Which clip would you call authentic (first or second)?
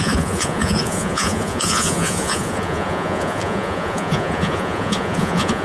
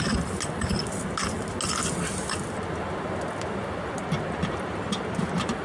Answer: second